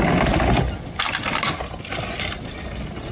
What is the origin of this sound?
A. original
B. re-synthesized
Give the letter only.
A